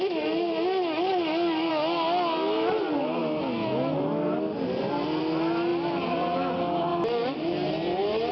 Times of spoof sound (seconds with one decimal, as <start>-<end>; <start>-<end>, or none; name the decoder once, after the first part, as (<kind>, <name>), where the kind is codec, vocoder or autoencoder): 1.1-1.7 (vocoder, BigVGAN v2); 5.7-6.5; 6.9-8.3